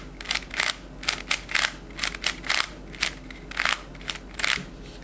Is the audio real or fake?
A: real